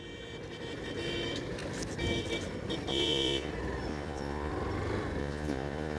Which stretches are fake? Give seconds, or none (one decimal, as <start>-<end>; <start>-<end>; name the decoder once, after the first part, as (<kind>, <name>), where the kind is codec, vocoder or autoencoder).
2.9-3.5 (vocoder, Vocos); 3.9-4.5; 5.2-6.0